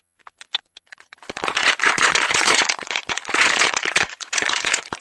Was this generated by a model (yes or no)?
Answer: yes